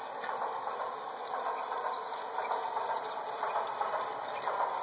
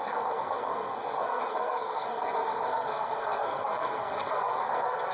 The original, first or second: first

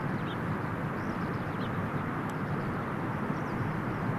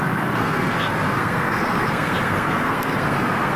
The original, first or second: first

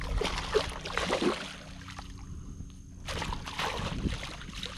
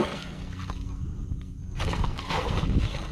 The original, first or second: first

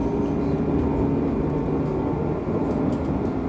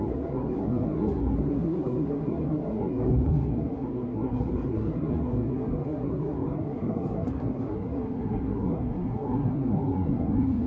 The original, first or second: first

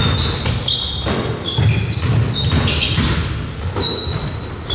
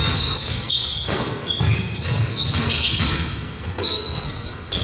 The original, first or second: first